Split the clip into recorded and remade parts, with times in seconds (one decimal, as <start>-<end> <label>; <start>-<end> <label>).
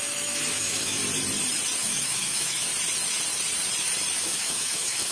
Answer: 0.0-1.0 remade; 1.0-1.8 recorded; 1.8-2.7 remade; 2.7-4.2 recorded; 4.2-5.1 remade